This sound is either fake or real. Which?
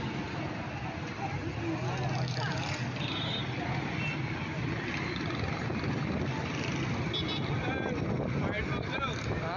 real